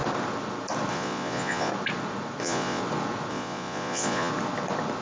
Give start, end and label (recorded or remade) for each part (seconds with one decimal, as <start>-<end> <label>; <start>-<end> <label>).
0.0-0.9 recorded; 0.9-1.7 remade; 1.7-2.4 recorded; 2.4-2.8 remade; 2.8-3.3 recorded; 3.3-4.3 remade; 4.3-5.0 recorded